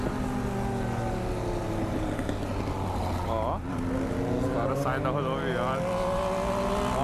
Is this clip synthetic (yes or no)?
no